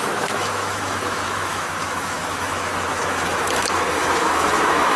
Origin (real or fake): fake